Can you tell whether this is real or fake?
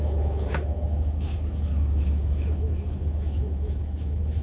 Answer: fake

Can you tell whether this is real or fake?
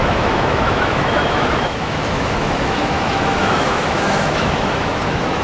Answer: fake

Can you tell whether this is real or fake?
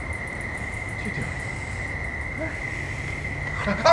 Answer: real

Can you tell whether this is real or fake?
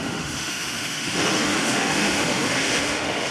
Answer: fake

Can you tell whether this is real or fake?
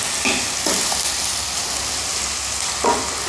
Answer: real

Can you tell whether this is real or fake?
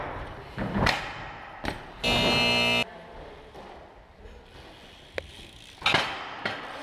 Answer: real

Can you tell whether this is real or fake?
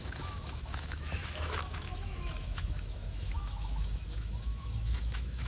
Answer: fake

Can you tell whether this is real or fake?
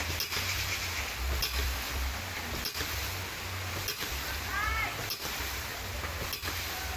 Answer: real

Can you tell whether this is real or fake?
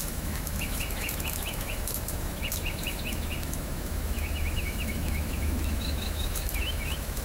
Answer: fake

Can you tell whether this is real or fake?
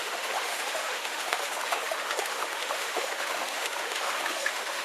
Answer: fake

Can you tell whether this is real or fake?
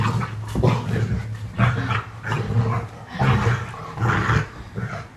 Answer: real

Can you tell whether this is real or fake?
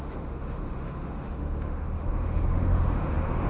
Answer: fake